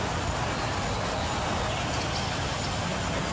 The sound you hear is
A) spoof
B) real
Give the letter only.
B